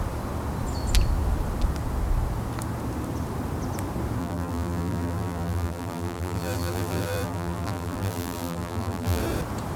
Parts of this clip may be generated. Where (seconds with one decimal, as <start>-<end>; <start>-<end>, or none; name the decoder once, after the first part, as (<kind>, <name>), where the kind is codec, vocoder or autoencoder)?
4.2-9.2 (vocoder, BigVGAN v2)